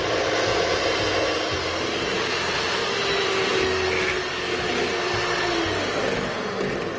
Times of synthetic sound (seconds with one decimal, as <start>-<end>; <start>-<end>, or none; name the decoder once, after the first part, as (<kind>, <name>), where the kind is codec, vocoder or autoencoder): none